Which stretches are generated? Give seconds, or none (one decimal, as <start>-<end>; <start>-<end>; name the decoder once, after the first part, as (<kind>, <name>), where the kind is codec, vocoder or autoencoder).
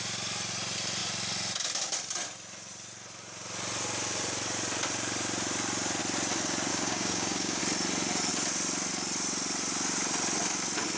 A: 6.7-7.6 (codec, DAC)